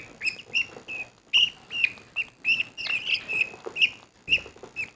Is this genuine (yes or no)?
yes